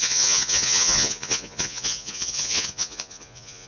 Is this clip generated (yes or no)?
yes